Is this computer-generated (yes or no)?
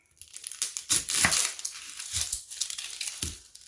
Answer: no